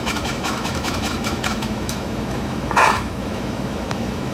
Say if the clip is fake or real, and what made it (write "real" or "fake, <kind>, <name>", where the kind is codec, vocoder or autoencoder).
fake, autoencoder, DAC-VAE